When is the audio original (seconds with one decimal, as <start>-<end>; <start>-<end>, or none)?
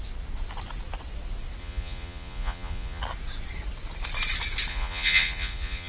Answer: 0.0-1.6; 3.0-4.7